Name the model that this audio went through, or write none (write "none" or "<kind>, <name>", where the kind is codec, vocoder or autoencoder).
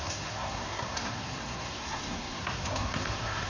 codec, SNAC